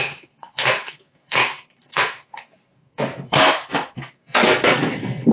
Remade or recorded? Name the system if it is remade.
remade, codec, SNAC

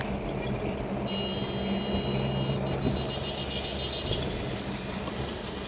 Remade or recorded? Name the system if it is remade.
recorded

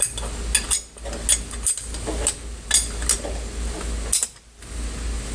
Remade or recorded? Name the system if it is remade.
recorded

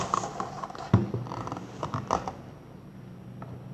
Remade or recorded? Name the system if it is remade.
recorded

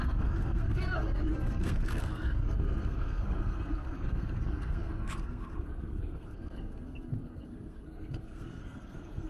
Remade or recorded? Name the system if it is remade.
remade, codec, SNAC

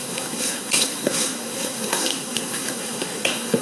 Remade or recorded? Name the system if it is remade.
remade, codec, SNAC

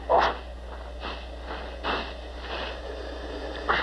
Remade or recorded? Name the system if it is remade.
recorded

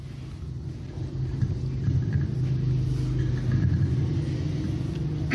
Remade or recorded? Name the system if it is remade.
recorded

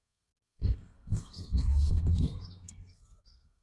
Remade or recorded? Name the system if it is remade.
remade, codec, SNAC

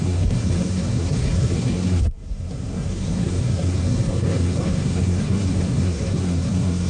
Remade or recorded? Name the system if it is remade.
remade, codec, SNAC